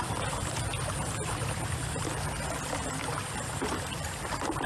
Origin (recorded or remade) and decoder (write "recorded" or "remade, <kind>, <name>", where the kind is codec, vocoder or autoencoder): remade, vocoder, BigVGAN v2